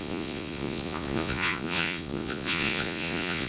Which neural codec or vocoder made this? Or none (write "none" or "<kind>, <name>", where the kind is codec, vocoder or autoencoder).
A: vocoder, Vocos